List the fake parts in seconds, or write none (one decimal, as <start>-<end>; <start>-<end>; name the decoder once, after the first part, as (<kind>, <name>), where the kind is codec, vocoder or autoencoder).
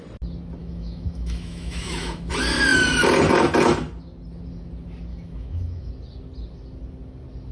0.6-2.3 (autoencoder, DAC-VAE); 5.1-5.9